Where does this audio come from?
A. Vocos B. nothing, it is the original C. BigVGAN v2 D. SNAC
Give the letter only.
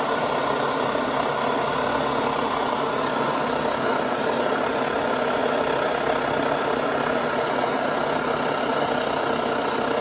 B